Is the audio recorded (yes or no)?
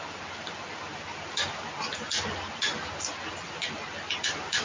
yes